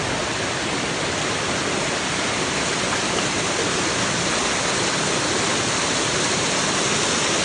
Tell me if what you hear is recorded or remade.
recorded